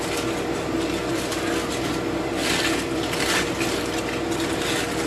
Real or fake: real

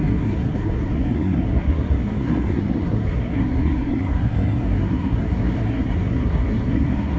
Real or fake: fake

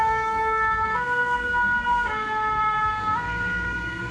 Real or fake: fake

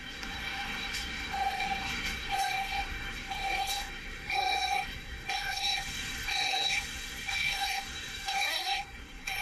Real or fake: fake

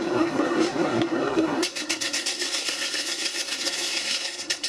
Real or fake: fake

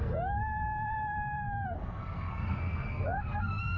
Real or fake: fake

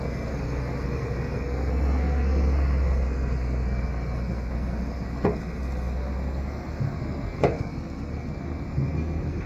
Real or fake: fake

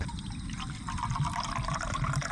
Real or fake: real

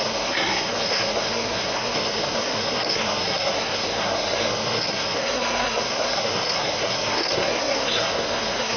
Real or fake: fake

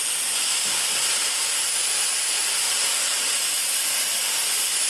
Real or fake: real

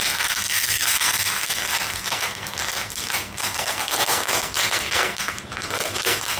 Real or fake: fake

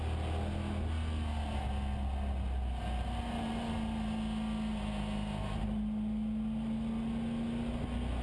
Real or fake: real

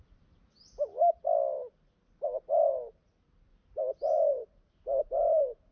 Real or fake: real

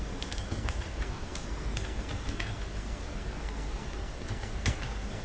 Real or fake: fake